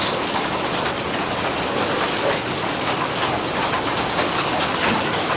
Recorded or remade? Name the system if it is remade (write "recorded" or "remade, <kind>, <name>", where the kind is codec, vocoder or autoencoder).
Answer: recorded